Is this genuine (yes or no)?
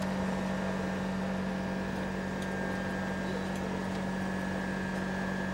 yes